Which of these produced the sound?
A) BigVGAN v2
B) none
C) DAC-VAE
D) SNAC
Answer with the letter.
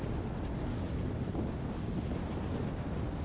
B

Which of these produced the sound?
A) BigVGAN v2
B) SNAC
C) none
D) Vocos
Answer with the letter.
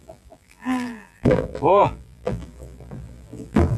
A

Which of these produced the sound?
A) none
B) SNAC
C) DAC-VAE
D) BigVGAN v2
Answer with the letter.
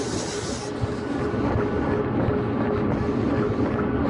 A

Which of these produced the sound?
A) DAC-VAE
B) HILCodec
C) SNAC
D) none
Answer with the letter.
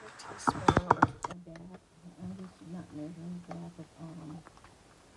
D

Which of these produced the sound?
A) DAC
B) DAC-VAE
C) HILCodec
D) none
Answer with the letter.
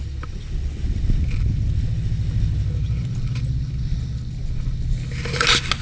D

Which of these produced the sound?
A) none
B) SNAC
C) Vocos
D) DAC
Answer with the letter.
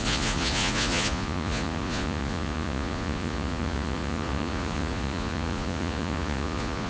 C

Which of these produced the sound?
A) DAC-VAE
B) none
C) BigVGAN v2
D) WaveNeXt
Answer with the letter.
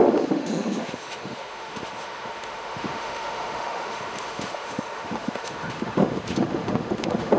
A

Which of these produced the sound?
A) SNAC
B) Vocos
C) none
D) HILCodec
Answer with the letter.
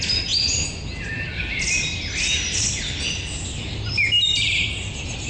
C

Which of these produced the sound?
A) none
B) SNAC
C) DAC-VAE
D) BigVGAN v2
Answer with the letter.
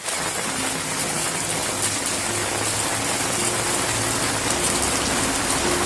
A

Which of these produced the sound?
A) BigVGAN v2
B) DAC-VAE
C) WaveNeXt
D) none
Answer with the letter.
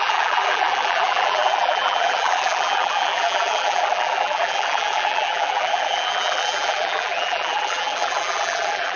A